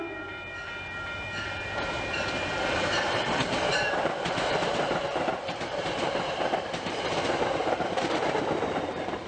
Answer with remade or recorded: remade